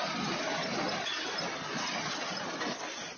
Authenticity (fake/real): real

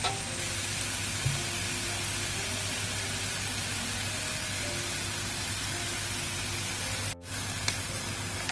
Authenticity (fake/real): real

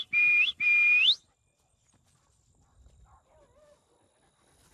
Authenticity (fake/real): real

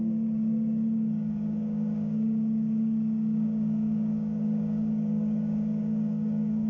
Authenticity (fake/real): fake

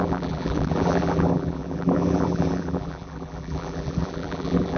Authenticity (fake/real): fake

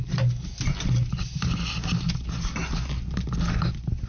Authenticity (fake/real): real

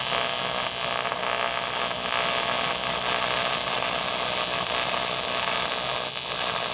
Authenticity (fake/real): real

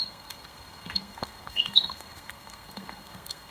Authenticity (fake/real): fake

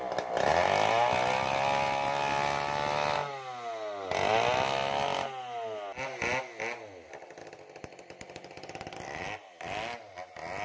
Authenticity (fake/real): real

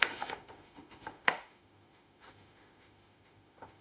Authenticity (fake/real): fake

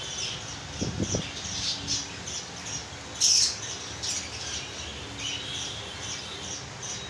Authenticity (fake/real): real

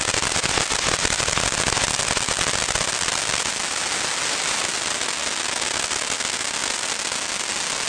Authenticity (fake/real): real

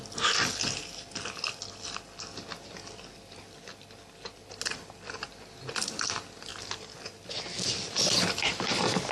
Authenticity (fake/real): real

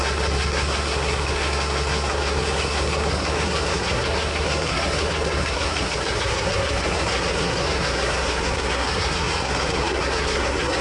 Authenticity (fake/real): fake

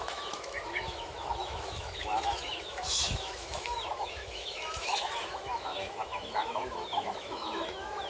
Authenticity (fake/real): fake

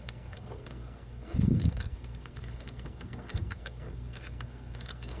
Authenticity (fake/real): fake